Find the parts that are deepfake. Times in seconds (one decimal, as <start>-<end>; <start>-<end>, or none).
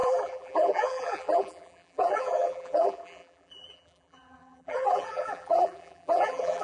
0.0-6.6